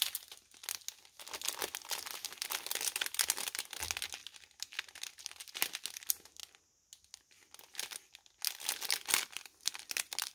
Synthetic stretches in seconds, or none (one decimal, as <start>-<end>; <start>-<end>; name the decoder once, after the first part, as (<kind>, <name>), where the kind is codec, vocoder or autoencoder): none

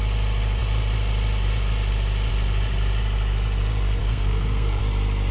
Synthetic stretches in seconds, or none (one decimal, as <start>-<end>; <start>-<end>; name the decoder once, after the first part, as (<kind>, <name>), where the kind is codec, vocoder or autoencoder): 4.0-4.8 (codec, SNAC)

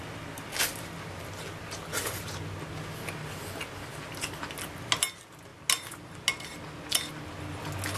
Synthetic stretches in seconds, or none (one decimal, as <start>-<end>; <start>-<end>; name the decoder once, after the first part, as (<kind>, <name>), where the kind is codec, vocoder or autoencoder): none

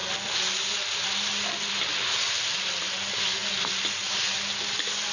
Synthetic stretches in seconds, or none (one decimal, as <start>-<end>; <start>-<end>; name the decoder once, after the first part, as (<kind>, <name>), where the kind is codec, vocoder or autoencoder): none

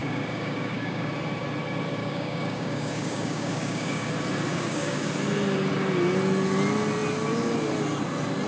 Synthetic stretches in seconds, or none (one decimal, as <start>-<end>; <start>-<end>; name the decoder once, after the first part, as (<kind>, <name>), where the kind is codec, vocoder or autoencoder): 0.0-1.1 (codec, DAC); 2.0-4.1; 4.5-5.1